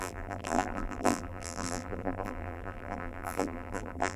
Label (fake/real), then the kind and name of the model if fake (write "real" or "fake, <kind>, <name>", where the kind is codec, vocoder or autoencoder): fake, vocoder, BigVGAN v2